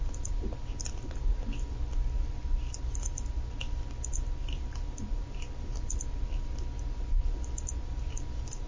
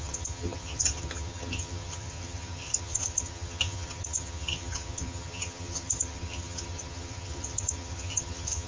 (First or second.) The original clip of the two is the first